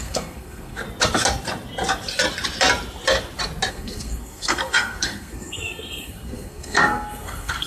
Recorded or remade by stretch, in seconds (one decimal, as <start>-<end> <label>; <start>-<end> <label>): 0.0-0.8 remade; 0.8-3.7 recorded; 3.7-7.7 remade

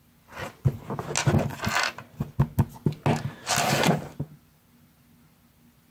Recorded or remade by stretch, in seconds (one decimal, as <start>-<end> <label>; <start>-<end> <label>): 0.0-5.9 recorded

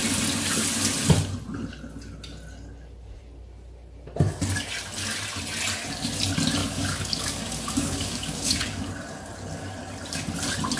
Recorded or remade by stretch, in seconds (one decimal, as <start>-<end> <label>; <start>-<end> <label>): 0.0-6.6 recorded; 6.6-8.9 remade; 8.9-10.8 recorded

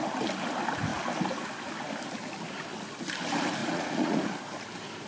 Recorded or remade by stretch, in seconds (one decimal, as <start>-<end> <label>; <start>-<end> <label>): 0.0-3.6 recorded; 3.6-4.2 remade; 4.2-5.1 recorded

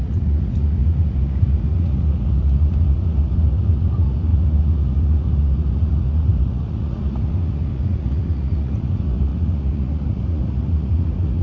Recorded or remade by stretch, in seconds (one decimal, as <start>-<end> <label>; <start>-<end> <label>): 0.0-11.4 remade

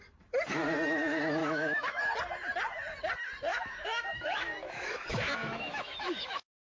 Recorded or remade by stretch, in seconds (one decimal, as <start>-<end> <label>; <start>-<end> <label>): 0.0-1.4 recorded; 1.4-2.0 remade; 2.0-3.5 recorded; 3.5-6.7 remade

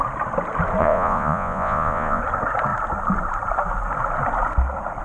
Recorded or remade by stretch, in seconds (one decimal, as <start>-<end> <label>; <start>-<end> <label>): 0.0-0.8 recorded; 0.8-2.2 remade; 2.2-5.0 recorded